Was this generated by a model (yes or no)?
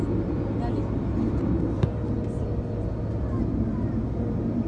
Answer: no